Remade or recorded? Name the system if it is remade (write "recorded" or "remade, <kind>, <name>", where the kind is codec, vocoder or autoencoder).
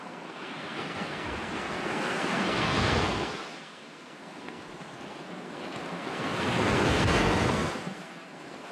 remade, codec, SNAC